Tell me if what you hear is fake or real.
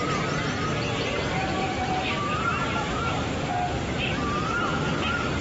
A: fake